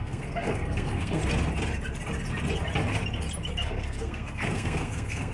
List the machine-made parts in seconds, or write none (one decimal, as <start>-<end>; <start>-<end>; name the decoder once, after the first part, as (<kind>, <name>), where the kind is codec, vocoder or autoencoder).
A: 0.0-1.2 (codec, SNAC); 3.5-5.3